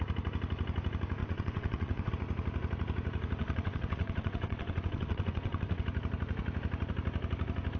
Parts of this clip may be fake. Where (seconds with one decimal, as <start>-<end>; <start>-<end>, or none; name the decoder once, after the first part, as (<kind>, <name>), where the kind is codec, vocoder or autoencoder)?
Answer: 1.2-2.1 (vocoder, WaveNeXt); 3.4-5.8